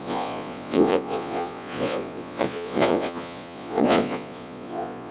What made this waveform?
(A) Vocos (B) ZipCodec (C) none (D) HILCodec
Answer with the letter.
A